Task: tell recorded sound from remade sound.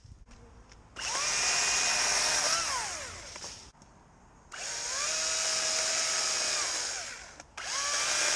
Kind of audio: recorded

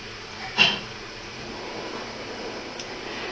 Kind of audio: remade